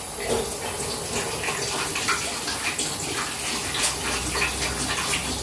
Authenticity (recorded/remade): recorded